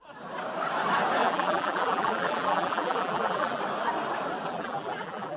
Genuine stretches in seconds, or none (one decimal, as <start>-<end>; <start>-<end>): 0.0-1.2; 3.6-4.5